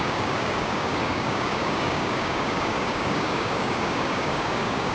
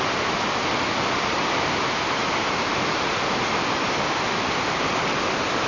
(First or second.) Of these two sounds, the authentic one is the second